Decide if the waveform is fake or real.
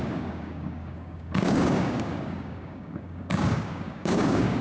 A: fake